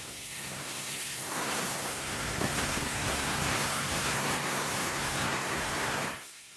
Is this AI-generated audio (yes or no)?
yes